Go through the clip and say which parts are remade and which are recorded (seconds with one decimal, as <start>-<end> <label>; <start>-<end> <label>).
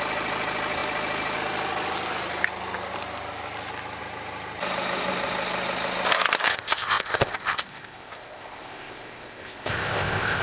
0.0-6.5 recorded; 6.5-10.4 remade